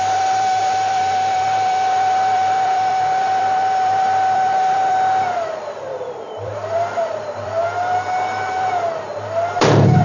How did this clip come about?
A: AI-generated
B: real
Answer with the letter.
A